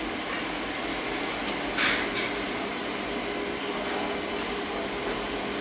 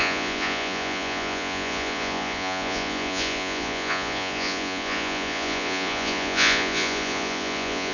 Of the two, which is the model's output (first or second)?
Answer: second